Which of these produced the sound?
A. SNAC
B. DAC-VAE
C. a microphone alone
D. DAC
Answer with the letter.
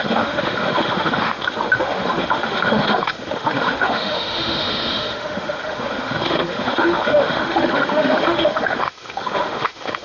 B